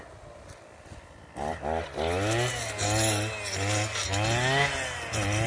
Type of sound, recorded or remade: recorded